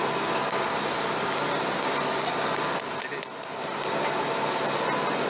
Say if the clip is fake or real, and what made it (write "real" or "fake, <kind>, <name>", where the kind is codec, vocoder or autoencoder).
real